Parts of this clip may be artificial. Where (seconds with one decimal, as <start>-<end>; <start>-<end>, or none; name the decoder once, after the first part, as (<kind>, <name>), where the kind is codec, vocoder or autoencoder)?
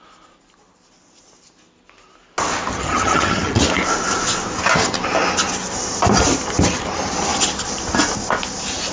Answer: 2.7-3.6 (vocoder, HiFi-GAN)